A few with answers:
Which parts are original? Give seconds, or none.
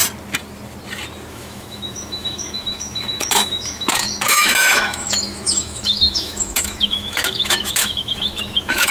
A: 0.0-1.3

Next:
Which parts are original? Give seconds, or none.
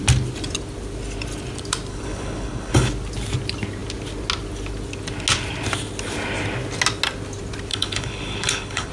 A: 0.0-1.9; 2.9-7.7